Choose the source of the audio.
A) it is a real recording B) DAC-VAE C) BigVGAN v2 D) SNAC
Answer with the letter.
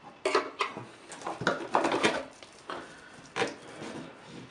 A